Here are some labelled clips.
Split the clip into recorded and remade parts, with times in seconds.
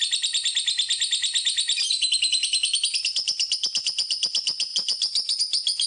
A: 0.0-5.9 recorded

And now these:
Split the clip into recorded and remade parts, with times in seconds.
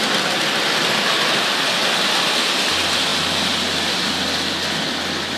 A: 0.0-5.4 recorded